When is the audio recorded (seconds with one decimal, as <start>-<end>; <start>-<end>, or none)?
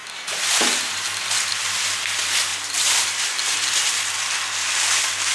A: 0.0-2.5; 3.3-5.3